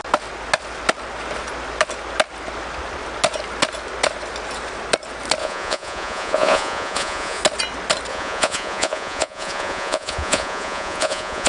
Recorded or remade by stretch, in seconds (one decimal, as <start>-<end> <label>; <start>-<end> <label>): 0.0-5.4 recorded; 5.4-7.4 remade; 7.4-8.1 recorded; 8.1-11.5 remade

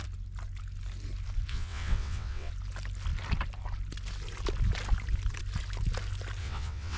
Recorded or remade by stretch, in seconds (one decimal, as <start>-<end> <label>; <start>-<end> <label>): 0.0-1.5 recorded; 1.5-2.5 remade; 2.5-6.4 recorded; 6.4-7.0 remade

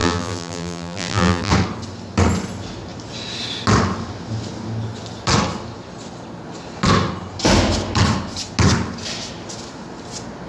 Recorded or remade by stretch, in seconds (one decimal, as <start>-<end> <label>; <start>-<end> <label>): 0.0-1.5 remade; 1.5-10.5 recorded